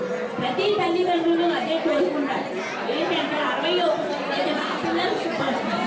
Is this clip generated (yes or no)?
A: no